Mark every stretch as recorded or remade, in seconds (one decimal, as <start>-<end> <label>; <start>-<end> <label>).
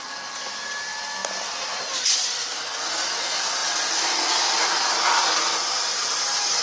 0.0-6.6 recorded